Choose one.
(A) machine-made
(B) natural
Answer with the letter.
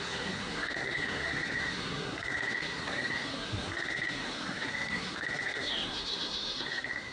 A